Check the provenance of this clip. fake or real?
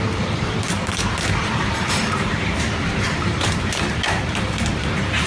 fake